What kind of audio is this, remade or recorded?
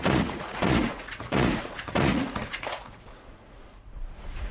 remade